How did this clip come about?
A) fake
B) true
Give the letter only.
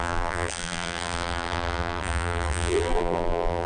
A